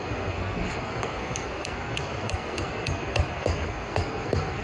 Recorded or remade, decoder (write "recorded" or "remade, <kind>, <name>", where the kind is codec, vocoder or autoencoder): remade, codec, SNAC